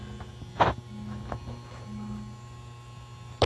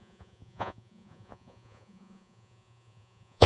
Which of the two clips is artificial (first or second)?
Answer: second